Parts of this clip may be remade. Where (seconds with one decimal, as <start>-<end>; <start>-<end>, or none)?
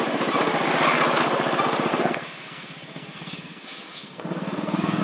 1.9-5.0